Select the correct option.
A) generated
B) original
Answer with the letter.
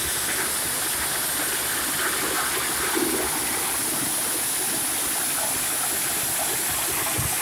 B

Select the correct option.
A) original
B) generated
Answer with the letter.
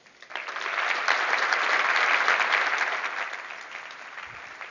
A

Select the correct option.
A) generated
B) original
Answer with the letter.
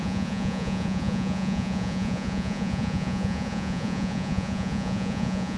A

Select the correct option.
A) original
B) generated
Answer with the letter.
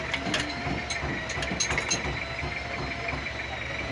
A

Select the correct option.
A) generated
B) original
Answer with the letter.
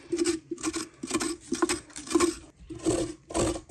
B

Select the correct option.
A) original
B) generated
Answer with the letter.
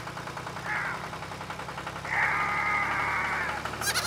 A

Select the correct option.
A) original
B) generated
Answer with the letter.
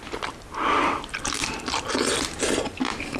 A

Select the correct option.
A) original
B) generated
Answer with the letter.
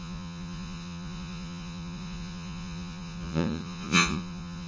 B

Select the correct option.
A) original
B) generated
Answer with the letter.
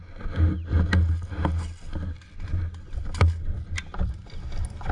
A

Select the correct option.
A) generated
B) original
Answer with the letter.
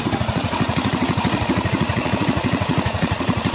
A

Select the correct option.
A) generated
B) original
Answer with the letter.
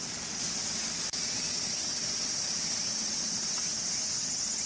B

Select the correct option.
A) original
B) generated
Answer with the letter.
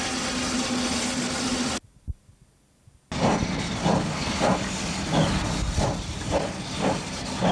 A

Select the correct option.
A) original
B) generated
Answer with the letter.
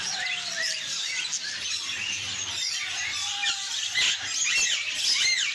A